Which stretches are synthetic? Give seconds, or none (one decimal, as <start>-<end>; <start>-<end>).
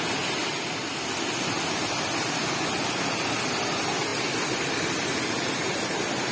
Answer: none